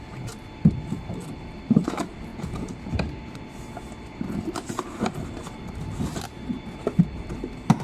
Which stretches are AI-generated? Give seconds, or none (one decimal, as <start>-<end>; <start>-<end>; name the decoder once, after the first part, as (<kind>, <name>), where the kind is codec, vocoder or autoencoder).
2.3-2.9 (vocoder, Vocos)